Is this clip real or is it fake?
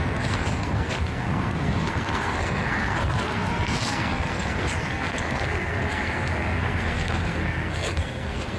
fake